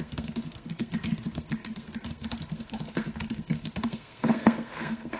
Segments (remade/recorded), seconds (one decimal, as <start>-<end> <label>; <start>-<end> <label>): 0.0-5.2 remade